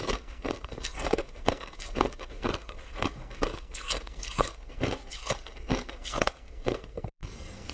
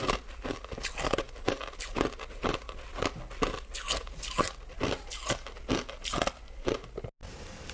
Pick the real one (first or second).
second